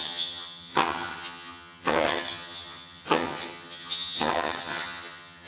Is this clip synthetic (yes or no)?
yes